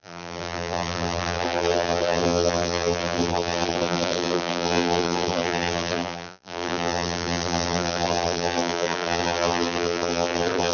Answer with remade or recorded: remade